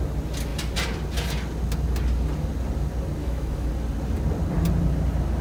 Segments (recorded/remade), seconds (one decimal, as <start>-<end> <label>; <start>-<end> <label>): 0.0-3.2 recorded; 3.2-3.7 remade; 3.7-5.4 recorded